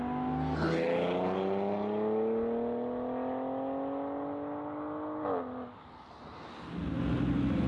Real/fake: real